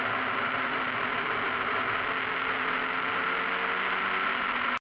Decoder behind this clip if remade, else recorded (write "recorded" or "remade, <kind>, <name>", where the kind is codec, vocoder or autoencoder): recorded